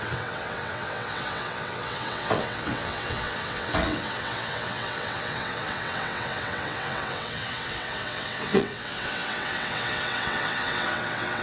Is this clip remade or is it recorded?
remade